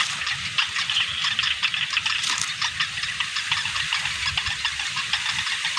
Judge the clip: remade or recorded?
recorded